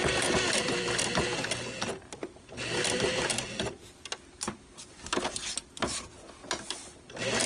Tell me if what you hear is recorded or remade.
recorded